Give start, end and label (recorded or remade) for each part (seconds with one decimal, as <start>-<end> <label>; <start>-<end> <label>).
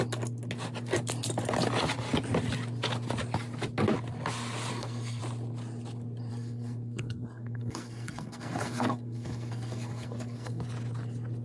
0.0-4.7 recorded; 4.7-5.2 remade; 5.2-6.3 recorded; 6.3-10.6 remade; 10.6-11.4 recorded